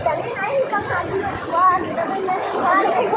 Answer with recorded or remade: remade